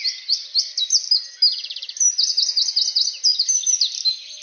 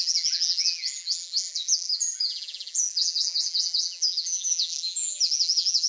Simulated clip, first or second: second